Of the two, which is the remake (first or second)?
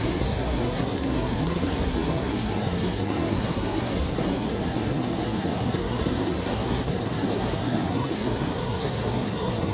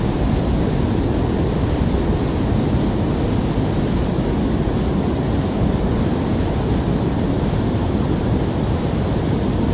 first